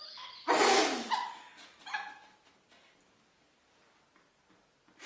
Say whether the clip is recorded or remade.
recorded